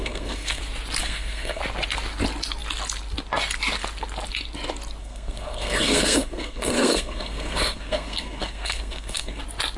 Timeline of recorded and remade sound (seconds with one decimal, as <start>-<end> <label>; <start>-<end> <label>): 0.0-0.6 remade; 0.6-1.0 recorded; 1.0-1.6 remade; 1.6-5.0 recorded; 5.0-9.4 remade; 9.4-9.8 recorded